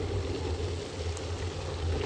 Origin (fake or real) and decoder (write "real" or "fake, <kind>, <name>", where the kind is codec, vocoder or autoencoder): real